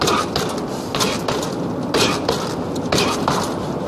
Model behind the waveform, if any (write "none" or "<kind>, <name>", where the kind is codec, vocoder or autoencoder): none